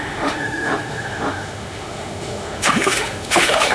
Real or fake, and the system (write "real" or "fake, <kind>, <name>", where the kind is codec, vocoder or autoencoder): fake, autoencoder, DAC-VAE